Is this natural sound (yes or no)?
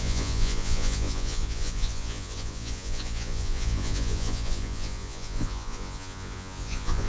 no